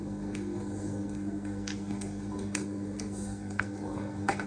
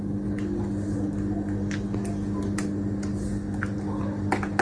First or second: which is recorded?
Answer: second